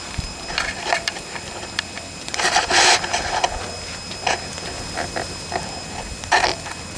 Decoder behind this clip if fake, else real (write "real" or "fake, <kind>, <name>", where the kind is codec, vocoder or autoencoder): fake, vocoder, BigVGAN v2